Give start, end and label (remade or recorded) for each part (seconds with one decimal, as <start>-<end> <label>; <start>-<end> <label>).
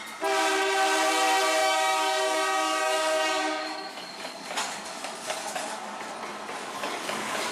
0.0-1.6 recorded; 1.6-6.1 remade; 6.1-6.6 recorded; 6.6-7.5 remade